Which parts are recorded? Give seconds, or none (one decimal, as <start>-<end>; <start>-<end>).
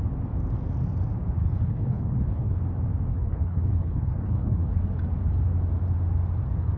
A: 0.0-1.4; 2.6-3.1; 4.8-6.8